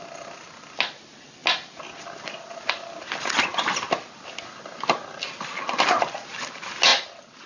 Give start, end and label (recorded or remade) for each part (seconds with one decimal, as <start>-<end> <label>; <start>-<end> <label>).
0.0-7.5 recorded